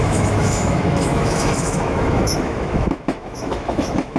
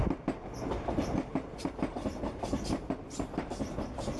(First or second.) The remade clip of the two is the first